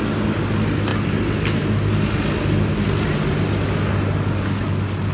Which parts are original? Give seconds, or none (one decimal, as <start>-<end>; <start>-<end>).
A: 0.0-5.1